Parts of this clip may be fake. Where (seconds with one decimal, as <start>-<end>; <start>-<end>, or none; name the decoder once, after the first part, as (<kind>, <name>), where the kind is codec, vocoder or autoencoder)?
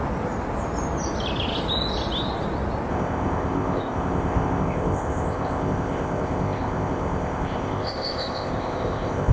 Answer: 2.9-9.3 (codec, ZipCodec)